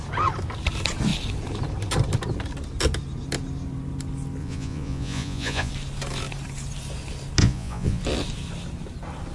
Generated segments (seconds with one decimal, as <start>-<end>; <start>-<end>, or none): 4.4-5.7; 7.4-8.0